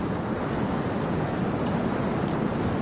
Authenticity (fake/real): fake